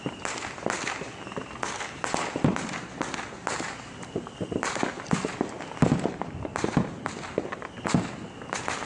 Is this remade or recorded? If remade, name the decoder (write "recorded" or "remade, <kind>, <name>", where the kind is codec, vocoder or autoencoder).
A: recorded